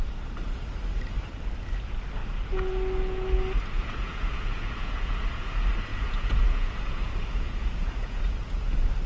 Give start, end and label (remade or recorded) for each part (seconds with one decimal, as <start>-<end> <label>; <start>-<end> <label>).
0.0-2.2 recorded; 2.2-5.5 remade; 5.5-5.9 recorded; 5.9-9.1 remade